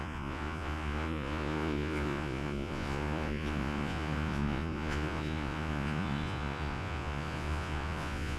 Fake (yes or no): yes